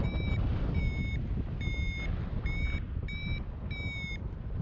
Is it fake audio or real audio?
real